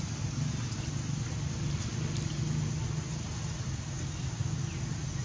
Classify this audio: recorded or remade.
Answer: recorded